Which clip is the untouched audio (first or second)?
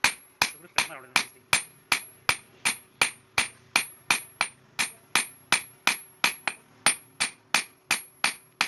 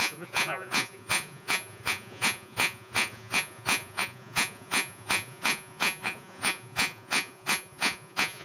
first